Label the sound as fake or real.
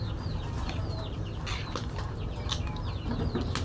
real